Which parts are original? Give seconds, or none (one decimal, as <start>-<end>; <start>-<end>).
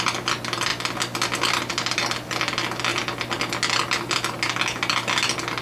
0.0-5.6